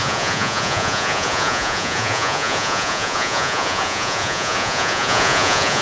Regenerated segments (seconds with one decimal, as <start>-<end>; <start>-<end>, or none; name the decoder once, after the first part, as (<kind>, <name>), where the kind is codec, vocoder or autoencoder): 0.0-5.8 (vocoder, Vocos)